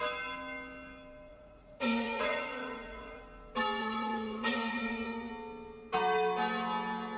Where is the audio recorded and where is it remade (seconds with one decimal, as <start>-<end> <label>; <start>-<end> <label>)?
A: 0.0-1.3 recorded; 1.3-3.2 remade; 3.2-3.8 recorded; 3.8-5.3 remade; 5.3-7.2 recorded